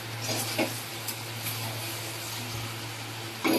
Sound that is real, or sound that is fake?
real